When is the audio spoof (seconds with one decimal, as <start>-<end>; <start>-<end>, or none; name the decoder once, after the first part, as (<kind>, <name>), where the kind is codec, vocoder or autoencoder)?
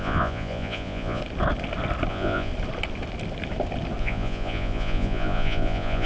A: 0.0-1.2 (vocoder, Vocos); 2.1-2.5; 4.0-6.1